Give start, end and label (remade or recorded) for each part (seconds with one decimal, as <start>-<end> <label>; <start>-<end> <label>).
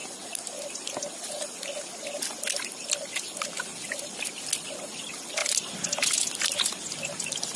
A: 0.0-7.6 recorded